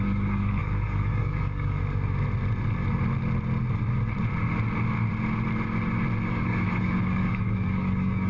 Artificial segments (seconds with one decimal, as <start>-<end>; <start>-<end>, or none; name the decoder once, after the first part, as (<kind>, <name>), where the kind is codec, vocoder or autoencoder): 0.0-1.8 (codec, DAC); 6.3-8.3